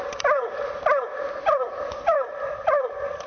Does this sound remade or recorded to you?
remade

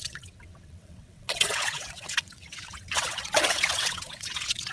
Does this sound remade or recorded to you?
remade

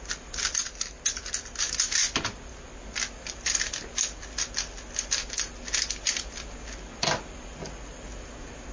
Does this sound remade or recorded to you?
recorded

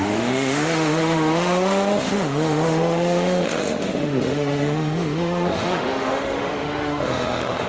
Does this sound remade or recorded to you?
remade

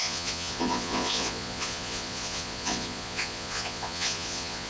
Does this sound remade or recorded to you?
remade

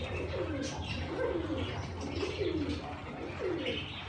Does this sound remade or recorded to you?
recorded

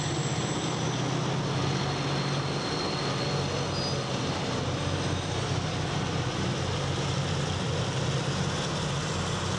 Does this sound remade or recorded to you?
recorded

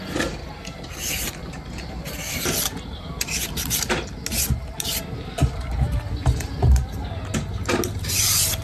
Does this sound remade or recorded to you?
recorded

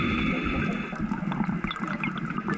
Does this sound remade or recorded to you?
recorded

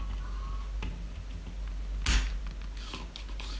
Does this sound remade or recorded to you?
recorded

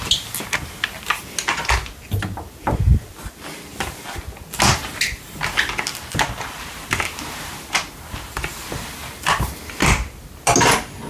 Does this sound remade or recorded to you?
recorded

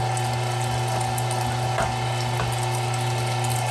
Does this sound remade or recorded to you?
recorded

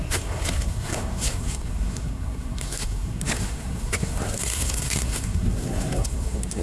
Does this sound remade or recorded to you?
remade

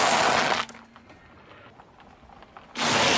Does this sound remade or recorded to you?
recorded